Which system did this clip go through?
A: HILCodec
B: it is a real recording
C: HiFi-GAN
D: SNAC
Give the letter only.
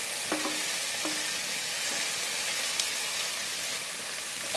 B